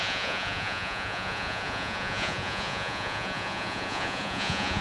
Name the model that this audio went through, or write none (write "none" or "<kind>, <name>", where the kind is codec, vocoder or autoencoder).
vocoder, Vocos